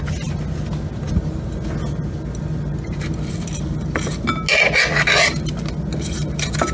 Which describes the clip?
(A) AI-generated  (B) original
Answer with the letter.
B